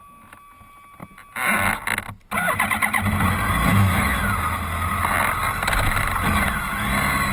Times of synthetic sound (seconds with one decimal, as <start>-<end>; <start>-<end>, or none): 3.7-4.2